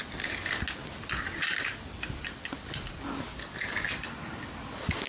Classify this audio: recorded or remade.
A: recorded